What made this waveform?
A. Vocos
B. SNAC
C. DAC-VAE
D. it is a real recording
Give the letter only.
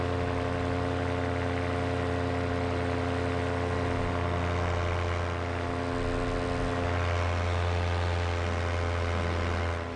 D